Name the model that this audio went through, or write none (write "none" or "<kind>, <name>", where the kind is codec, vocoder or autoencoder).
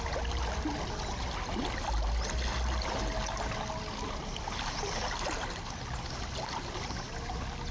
none